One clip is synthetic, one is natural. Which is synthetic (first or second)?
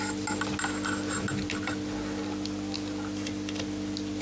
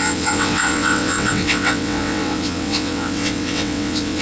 second